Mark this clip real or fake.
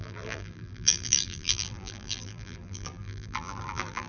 fake